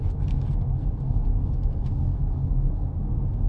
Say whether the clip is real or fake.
fake